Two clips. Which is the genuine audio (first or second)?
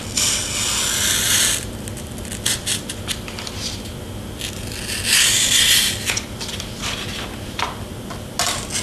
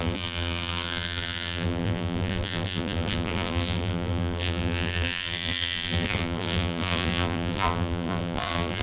first